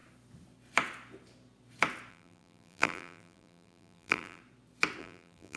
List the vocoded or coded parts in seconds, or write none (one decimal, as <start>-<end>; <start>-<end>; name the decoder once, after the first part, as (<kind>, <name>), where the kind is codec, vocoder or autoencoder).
2.1-4.4 (vocoder, BigVGAN v2); 5.0-5.6